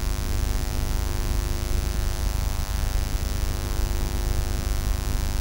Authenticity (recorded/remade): recorded